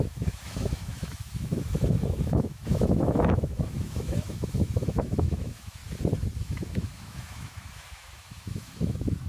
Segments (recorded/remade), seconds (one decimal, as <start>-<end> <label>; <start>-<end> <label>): 0.0-5.8 remade; 5.8-6.4 recorded; 6.4-9.3 remade